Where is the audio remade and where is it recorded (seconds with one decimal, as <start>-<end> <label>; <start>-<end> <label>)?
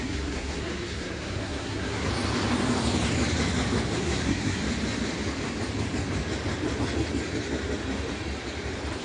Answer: 0.0-2.1 remade; 2.1-4.0 recorded; 4.0-4.6 remade; 4.6-9.0 recorded